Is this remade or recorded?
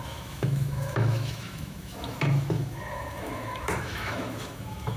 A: remade